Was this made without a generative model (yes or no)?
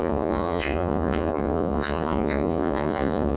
no